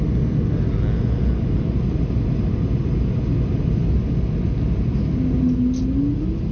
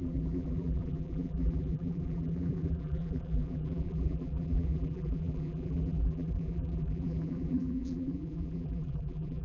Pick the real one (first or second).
first